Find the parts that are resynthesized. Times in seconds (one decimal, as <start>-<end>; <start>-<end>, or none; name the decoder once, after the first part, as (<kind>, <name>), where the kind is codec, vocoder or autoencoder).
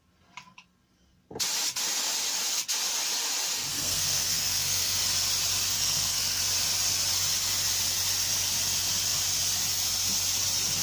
3.7-5.0 (codec, SNAC); 5.7-6.4